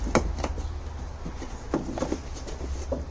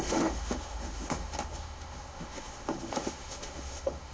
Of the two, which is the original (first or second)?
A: first